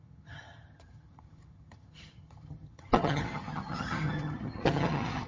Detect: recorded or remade remade